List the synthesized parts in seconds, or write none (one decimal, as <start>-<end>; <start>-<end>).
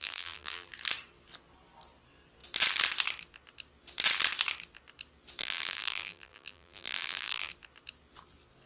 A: 0.0-0.7; 5.4-7.5